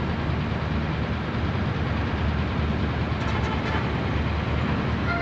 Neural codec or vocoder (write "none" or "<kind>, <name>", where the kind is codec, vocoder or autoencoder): none